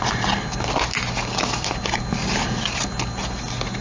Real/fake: real